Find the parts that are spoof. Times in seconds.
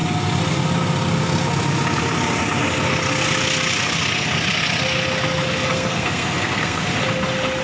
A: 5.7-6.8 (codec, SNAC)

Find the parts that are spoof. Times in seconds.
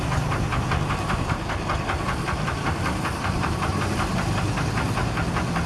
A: none